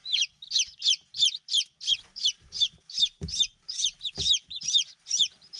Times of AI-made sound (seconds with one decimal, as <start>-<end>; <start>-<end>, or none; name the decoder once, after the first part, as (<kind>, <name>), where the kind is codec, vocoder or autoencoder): none